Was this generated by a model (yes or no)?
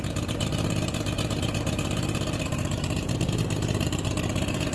yes